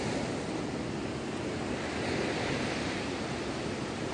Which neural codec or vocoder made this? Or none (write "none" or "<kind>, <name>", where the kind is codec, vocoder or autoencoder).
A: none